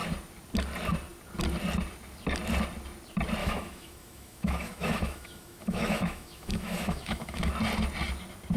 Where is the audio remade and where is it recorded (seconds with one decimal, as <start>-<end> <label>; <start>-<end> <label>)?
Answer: 0.0-3.4 recorded; 3.4-7.5 remade; 7.5-8.6 recorded